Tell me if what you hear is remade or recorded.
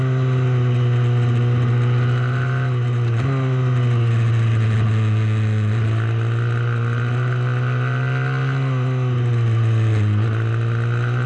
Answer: recorded